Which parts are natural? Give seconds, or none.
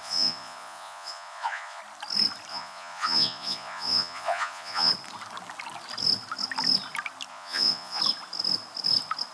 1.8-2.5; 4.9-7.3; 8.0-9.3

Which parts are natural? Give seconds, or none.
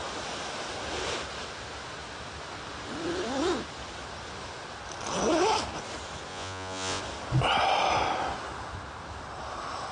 0.0-6.3; 7.0-9.9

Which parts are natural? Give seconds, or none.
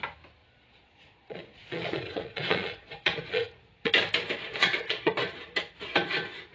0.0-0.4; 3.9-4.4; 5.1-6.5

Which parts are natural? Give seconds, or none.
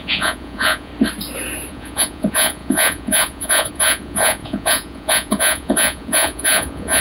0.9-1.7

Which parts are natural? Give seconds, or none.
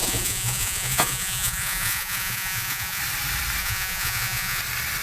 3.0-3.6; 4.6-5.0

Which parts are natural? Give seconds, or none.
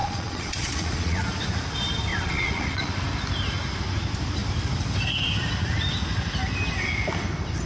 1.2-2.1; 2.9-7.7